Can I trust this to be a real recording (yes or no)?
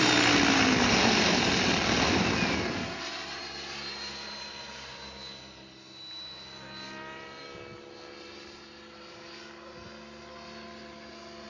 yes